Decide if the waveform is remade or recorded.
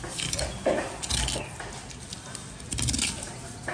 recorded